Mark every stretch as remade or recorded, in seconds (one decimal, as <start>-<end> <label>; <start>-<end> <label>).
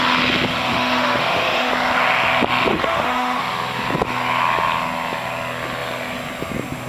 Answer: 0.0-0.7 recorded; 0.7-1.7 remade; 1.7-2.7 recorded; 2.7-3.4 remade; 3.4-6.9 recorded